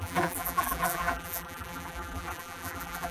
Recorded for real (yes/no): no